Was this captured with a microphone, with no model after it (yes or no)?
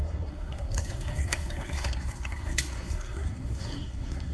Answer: no